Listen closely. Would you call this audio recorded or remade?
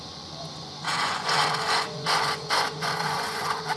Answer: remade